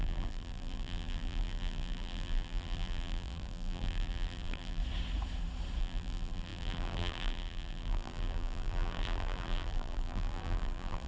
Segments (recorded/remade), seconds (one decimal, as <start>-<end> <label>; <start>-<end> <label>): 0.0-4.8 remade; 4.8-5.8 recorded; 5.8-11.1 remade